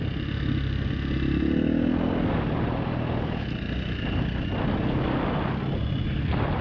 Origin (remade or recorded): recorded